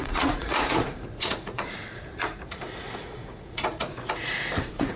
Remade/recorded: remade